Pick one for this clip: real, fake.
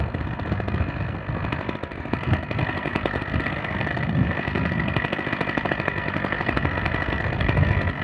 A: fake